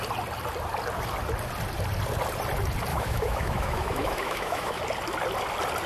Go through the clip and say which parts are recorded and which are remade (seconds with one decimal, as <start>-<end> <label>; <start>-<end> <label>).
0.0-2.9 recorded; 2.9-4.8 remade; 4.8-5.9 recorded